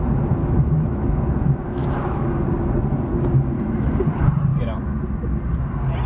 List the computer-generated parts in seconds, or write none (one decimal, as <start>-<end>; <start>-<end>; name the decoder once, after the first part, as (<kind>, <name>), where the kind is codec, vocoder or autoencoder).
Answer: 0.4-1.1 (autoencoder, DAC-VAE); 1.8-2.4